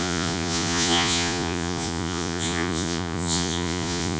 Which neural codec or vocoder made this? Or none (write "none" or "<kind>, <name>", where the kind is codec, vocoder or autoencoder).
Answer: vocoder, Vocos